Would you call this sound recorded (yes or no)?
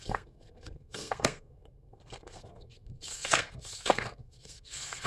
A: no